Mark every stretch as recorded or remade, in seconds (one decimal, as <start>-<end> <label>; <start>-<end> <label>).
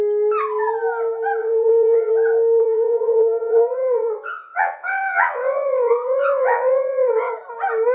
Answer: 0.0-1.4 recorded; 1.4-2.1 remade; 2.1-2.6 recorded; 2.6-7.3 remade; 7.3-7.9 recorded